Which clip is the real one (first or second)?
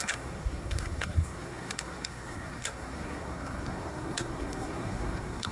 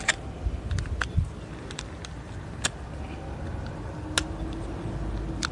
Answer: second